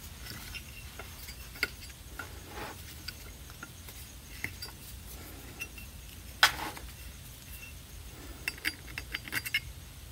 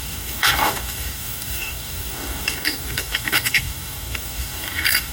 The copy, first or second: second